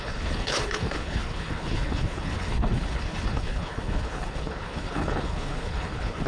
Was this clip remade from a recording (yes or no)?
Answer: yes